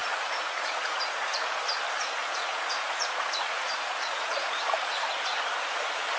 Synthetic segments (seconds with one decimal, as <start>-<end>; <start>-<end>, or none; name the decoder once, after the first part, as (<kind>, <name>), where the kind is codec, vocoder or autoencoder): 0.0-1.6 (vocoder, Vocos); 2.2-5.0

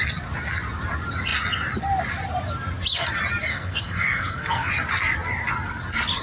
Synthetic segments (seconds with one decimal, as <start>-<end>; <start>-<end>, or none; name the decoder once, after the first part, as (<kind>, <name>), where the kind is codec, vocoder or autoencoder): 3.5-4.7 (codec, SNAC)

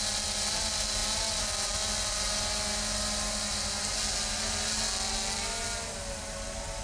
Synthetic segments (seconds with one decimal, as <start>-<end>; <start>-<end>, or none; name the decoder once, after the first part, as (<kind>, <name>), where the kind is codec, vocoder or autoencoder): none

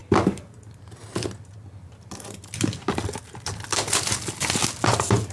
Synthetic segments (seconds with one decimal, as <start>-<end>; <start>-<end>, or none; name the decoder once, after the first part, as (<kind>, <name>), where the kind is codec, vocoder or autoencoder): none

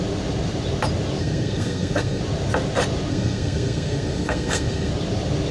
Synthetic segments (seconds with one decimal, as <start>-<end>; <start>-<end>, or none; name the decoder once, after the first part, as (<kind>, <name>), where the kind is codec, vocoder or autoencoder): 1.2-2.2 (codec, SNAC); 3.1-4.9

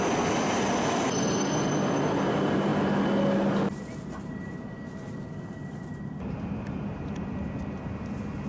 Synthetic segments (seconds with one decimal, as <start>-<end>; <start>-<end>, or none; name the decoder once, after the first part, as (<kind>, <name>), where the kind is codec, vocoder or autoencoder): none

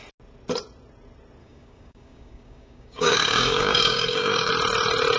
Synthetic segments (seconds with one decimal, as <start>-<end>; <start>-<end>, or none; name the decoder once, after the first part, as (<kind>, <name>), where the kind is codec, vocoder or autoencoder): 1.4-4.5 (codec, DAC)

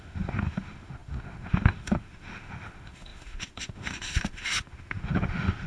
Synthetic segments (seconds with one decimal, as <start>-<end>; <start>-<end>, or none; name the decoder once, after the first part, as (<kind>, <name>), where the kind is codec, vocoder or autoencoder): 0.0-5.7 (autoencoder, DAC-VAE)